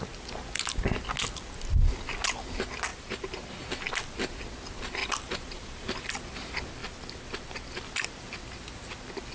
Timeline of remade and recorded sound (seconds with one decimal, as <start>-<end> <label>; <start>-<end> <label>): 0.0-2.9 recorded; 2.9-3.6 remade; 3.6-5.0 recorded; 5.0-6.1 remade; 6.1-9.3 recorded